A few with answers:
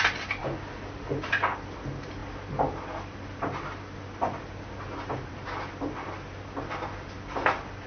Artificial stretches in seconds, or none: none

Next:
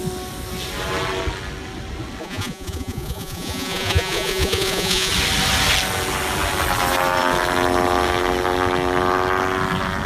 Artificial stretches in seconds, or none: 2.2-5.1 (vocoder, Vocos)

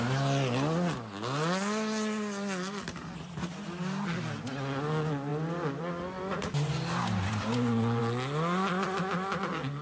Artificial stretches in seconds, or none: none

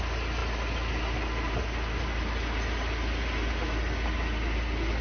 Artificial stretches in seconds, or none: none

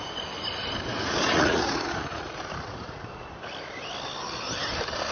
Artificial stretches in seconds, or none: 0.9-3.3 (vocoder, Vocos)

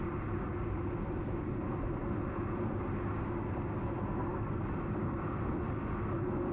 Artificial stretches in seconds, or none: none

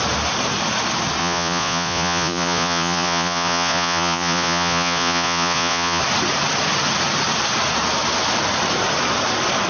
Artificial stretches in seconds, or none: 1.2-6.0 (vocoder, Vocos)